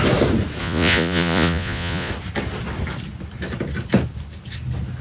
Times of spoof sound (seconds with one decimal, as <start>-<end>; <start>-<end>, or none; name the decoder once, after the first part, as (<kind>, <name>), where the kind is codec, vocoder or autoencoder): 0.6-2.1 (vocoder, Vocos)